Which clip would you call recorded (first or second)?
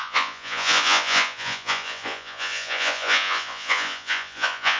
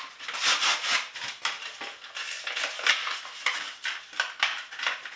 second